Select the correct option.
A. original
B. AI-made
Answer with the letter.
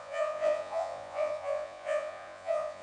B